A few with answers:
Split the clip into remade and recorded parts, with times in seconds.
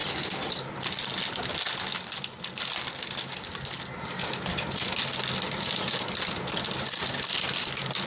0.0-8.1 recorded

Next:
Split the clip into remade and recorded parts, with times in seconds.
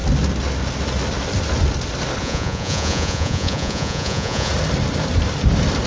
0.0-2.2 recorded; 2.2-4.5 remade; 4.5-5.9 recorded